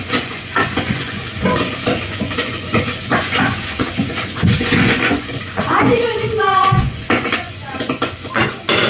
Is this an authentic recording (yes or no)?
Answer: no